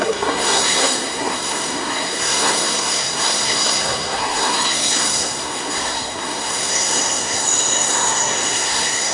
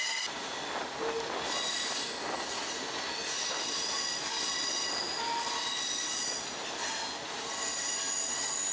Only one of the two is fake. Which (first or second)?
first